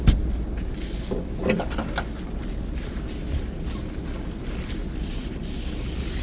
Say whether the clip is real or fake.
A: real